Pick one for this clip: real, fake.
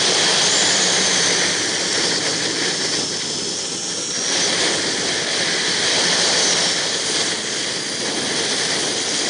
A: real